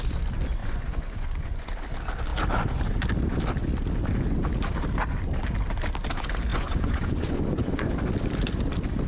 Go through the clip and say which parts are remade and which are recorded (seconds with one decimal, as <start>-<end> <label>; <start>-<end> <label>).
0.0-0.6 recorded; 0.6-1.7 remade; 1.7-6.5 recorded; 6.5-7.9 remade; 7.9-9.1 recorded